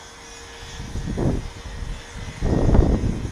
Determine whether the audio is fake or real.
real